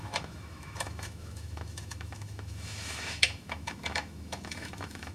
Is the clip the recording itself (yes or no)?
no